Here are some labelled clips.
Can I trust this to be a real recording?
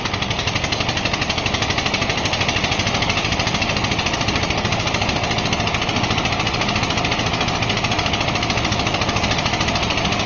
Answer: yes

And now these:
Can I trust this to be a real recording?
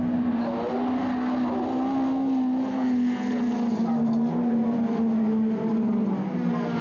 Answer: yes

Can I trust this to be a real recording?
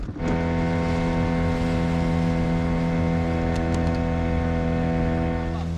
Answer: yes